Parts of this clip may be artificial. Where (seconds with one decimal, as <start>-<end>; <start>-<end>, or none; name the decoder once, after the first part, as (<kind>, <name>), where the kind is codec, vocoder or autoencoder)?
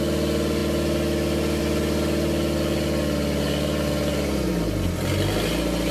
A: none